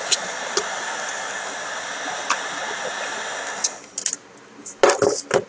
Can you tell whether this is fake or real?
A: real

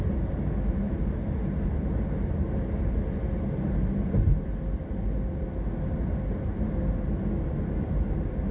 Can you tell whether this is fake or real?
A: real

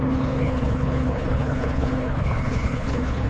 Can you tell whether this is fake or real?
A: fake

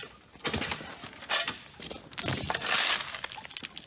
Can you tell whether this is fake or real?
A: real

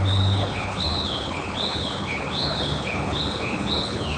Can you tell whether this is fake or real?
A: fake